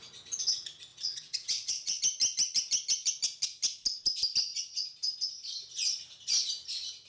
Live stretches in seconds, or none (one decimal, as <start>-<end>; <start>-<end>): 0.0-0.9; 2.0-7.1